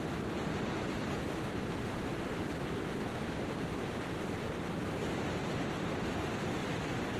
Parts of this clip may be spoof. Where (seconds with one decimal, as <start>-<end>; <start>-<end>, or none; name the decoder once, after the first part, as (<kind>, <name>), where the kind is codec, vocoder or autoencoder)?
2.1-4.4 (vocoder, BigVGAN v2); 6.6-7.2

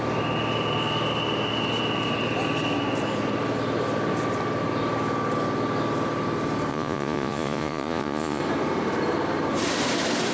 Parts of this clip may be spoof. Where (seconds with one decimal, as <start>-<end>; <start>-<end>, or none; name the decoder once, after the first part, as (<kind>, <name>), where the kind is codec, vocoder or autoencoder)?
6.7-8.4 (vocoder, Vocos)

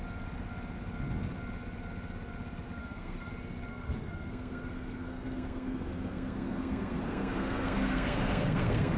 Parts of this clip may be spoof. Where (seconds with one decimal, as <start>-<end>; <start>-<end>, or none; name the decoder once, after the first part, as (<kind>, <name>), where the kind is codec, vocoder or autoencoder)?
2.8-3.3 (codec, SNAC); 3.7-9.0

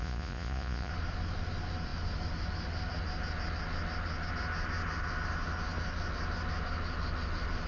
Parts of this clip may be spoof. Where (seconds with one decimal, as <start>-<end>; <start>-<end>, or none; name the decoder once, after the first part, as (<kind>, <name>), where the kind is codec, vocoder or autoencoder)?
0.0-0.9 (vocoder, Vocos)

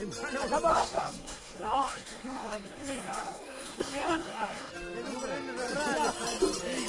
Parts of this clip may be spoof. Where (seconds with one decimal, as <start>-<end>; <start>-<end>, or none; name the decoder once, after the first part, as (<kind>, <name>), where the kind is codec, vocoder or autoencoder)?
0.7-4.7 (codec, SNAC)

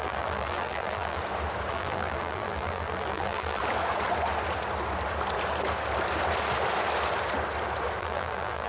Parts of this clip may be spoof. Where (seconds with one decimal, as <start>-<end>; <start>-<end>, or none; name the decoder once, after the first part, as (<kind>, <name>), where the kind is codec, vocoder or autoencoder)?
0.0-1.2 (vocoder, BigVGAN v2); 1.7-3.6; 8.0-8.7